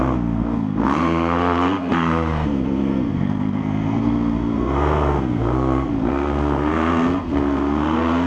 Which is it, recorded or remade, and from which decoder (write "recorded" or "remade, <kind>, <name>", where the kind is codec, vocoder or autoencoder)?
remade, codec, SNAC